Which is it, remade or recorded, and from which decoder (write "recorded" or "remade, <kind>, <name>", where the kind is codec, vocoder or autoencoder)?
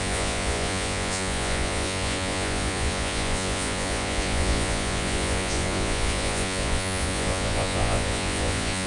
remade, vocoder, Vocos